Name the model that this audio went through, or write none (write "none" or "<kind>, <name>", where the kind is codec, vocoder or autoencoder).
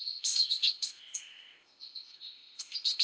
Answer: codec, ZipCodec